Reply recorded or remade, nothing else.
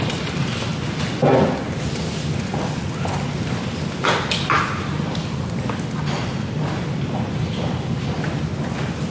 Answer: recorded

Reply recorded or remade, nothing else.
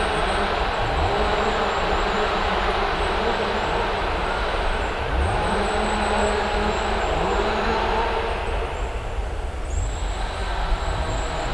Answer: recorded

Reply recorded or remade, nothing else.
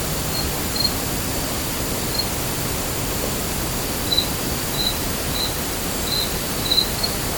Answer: recorded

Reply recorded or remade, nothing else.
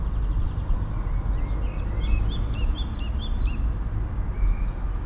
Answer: recorded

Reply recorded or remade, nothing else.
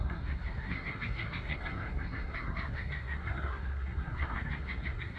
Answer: remade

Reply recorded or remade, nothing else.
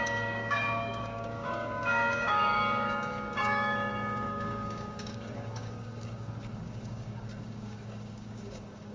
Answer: remade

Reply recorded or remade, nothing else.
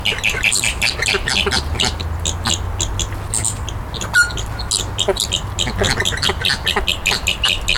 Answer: recorded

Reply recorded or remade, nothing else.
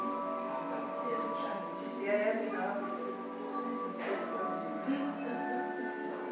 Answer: recorded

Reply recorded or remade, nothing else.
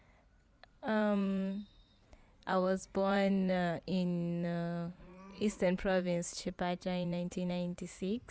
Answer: remade